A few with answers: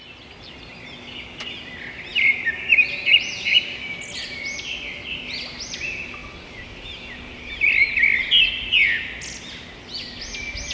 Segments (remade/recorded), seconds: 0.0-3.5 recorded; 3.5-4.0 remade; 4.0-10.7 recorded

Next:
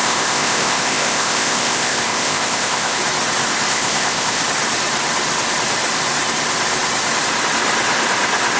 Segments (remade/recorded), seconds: 0.0-3.0 remade; 3.0-3.7 recorded; 3.7-4.4 remade; 4.4-8.6 recorded

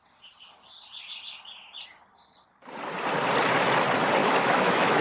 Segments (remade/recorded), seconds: 0.0-4.2 recorded; 4.2-5.0 remade